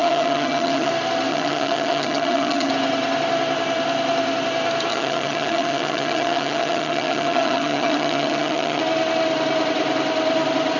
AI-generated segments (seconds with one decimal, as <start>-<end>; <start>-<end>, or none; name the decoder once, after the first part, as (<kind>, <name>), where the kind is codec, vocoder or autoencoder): 0.0-0.9 (vocoder, HiFi-GAN); 1.3-2.7; 4.9-8.8